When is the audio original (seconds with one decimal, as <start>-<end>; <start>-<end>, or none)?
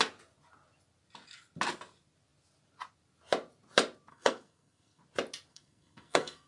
0.0-4.1; 5.0-5.5